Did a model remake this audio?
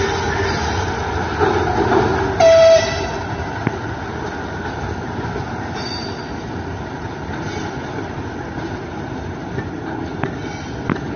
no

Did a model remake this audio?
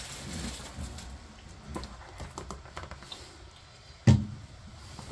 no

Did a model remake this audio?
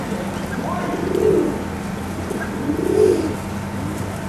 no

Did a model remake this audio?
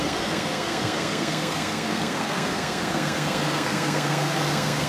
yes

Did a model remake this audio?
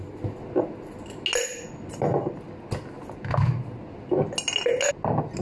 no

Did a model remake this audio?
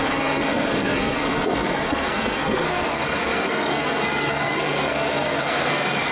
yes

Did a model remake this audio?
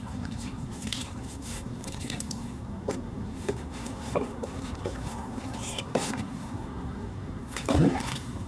yes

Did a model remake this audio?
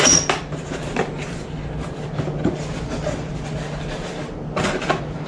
no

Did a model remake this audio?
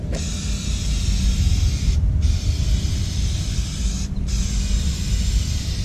no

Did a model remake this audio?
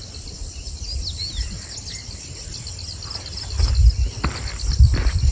no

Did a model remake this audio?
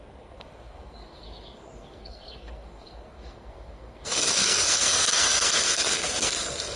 yes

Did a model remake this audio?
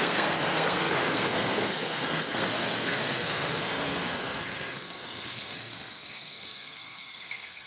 yes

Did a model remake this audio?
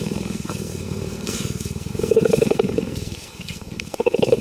yes